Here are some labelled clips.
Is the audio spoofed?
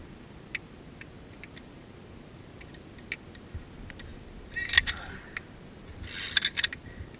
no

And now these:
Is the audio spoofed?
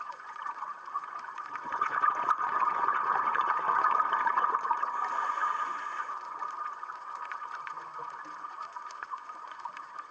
yes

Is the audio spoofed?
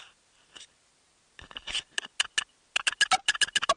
no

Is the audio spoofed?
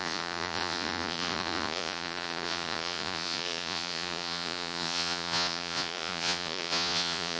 yes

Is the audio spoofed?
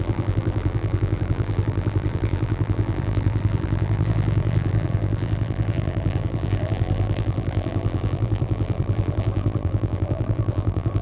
yes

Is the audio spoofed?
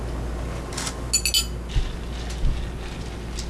no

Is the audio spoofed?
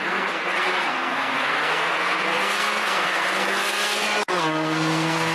yes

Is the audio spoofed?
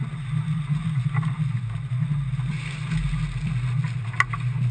no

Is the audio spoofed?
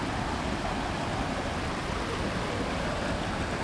no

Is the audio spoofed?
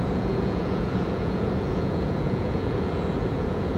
yes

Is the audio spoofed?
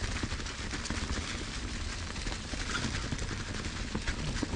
no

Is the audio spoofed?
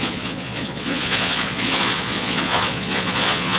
yes